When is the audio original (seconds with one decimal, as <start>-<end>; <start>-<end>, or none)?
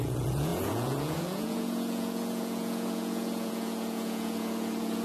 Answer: none